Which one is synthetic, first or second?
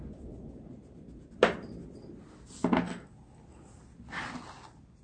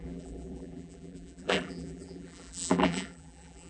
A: second